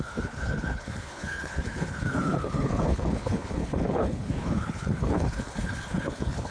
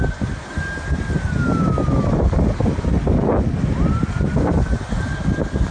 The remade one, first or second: first